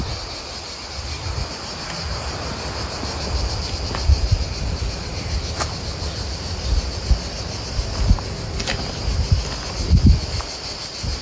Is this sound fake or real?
real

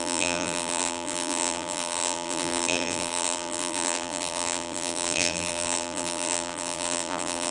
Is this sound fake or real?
fake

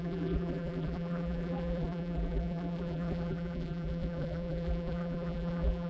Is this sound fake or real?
fake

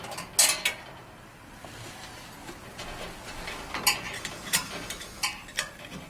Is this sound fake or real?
real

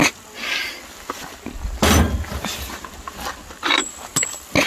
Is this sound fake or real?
real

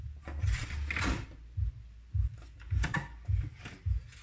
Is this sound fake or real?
real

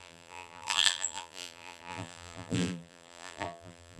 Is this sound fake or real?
fake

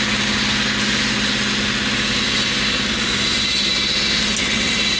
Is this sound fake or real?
real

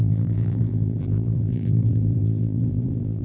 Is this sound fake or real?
fake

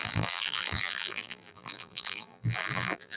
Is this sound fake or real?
fake